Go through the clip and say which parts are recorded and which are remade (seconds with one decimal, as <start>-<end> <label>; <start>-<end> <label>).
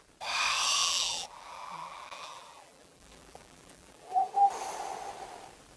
0.0-0.8 recorded; 0.8-4.3 remade; 4.3-5.8 recorded